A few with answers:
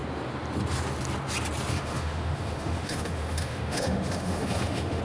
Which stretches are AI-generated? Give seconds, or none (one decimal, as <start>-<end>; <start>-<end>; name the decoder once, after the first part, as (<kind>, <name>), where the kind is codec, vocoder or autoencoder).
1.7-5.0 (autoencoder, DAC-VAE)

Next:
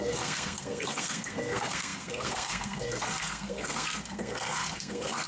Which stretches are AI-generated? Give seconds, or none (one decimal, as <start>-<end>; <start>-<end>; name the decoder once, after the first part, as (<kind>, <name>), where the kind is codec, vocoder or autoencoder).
0.0-5.3 (codec, SNAC)

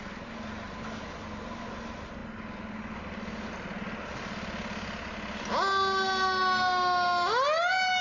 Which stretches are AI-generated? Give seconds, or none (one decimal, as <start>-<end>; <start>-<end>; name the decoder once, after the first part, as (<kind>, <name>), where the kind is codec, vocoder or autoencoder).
none

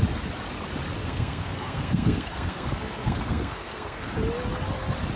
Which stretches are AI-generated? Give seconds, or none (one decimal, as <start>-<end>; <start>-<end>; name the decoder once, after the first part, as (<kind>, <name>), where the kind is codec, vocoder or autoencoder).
1.0-4.1 (codec, SNAC)

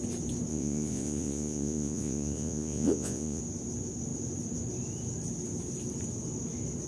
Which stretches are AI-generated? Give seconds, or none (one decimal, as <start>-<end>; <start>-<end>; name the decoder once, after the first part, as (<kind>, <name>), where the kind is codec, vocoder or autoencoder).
0.5-3.4 (vocoder, Vocos)